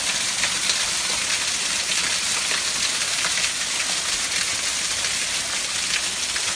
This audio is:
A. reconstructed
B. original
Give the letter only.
B